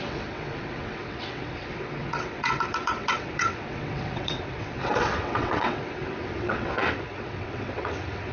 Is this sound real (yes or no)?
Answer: no